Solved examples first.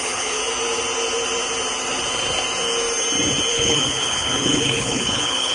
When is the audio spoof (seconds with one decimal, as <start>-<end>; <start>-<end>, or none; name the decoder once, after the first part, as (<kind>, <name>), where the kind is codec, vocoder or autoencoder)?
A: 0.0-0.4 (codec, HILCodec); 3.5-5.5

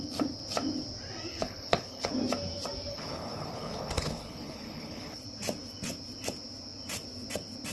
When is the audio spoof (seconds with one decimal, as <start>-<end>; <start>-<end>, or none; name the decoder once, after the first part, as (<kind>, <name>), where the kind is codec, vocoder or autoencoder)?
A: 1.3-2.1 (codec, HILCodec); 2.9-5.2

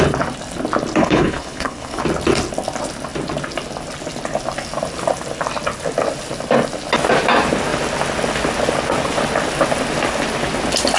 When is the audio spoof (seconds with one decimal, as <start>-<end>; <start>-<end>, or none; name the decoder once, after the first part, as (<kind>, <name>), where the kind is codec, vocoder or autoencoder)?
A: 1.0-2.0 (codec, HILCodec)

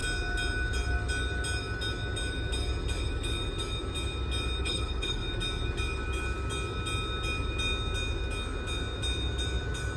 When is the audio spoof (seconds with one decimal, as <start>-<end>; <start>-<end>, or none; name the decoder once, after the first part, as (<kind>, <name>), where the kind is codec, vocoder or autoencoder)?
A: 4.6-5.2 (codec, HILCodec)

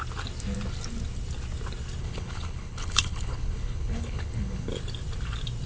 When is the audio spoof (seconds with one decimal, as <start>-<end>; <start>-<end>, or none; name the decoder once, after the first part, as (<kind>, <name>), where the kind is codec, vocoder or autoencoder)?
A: 2.0-4.7 (codec, HILCodec)

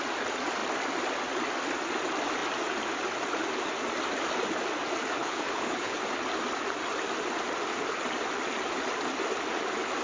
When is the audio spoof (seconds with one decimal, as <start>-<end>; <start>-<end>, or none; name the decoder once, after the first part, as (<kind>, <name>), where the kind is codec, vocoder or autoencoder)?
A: 5.2-6.0 (codec, HILCodec)